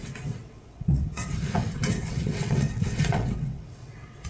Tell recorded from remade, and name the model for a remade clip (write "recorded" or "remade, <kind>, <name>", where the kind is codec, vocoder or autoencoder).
remade, vocoder, WaveNeXt